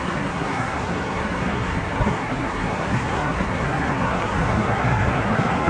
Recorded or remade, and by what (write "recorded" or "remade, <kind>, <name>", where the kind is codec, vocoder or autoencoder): remade, codec, SNAC